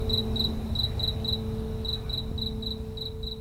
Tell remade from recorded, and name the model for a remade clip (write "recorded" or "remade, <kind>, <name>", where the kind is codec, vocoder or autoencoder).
recorded